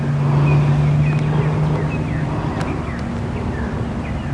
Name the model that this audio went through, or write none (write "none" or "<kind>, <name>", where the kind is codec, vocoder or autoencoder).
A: none